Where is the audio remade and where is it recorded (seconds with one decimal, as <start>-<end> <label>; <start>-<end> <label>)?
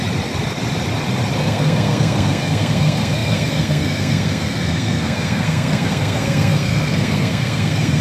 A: 0.0-1.4 recorded; 1.4-8.0 remade